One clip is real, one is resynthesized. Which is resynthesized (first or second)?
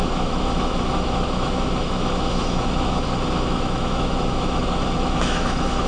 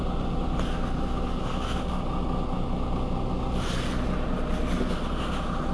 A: first